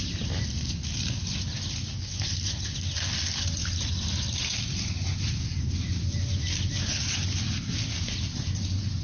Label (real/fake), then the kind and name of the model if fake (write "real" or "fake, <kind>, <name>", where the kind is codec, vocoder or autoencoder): real